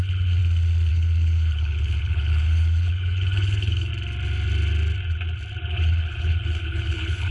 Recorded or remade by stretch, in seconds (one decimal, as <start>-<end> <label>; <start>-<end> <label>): 0.0-0.4 remade; 0.4-0.9 recorded; 0.9-3.9 remade; 3.9-5.7 recorded; 5.7-7.3 remade